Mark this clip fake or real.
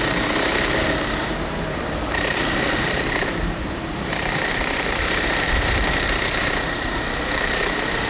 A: fake